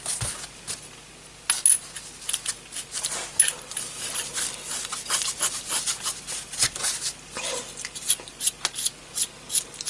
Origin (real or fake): real